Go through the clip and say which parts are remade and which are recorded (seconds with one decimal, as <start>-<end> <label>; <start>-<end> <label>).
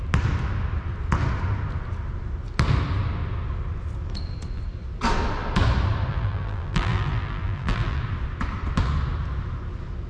0.0-6.1 recorded; 6.1-8.0 remade; 8.0-10.1 recorded